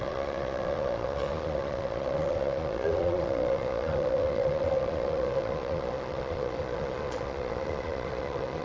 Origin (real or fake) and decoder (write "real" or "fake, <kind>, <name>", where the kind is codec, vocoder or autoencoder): fake, vocoder, Vocos